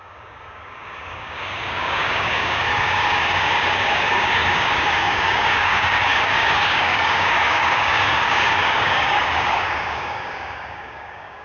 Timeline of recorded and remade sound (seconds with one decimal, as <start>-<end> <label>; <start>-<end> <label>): 0.0-11.4 remade